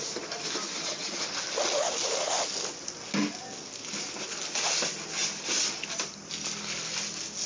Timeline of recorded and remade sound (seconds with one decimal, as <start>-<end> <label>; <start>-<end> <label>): 0.0-0.6 recorded; 0.6-1.2 remade; 1.2-7.5 recorded